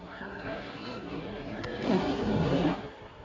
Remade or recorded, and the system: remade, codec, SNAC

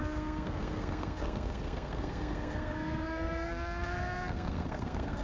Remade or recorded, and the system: remade, codec, SNAC